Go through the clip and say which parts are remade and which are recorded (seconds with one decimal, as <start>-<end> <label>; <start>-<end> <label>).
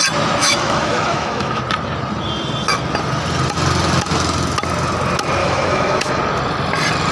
0.0-0.4 recorded; 0.4-1.6 remade; 1.6-5.4 recorded; 5.4-6.2 remade; 6.2-7.1 recorded